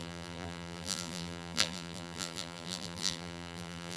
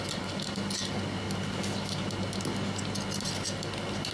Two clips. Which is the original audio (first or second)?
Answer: second